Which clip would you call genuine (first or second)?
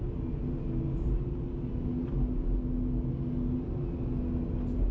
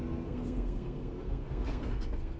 first